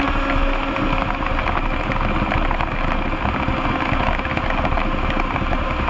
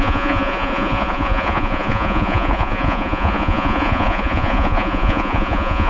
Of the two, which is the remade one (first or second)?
second